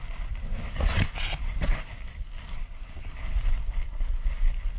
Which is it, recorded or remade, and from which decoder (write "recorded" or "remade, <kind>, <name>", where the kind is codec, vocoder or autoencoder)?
recorded